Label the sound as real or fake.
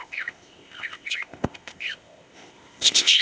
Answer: fake